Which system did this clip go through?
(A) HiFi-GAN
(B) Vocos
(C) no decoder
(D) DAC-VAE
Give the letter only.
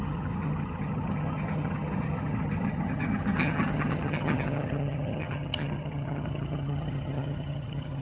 A